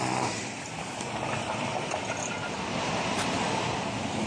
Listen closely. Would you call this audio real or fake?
real